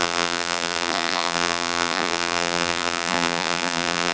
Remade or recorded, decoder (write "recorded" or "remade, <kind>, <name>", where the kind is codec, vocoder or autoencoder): remade, vocoder, BigVGAN v2